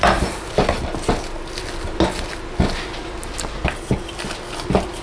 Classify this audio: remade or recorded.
recorded